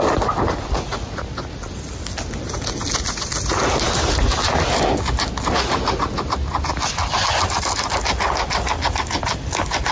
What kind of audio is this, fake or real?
real